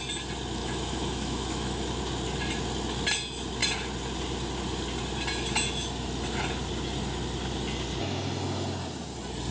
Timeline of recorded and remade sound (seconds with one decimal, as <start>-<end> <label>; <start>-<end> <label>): 0.0-0.6 recorded; 0.6-2.0 remade; 2.0-9.5 recorded